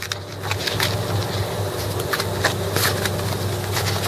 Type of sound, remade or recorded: recorded